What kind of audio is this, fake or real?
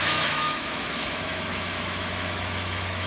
fake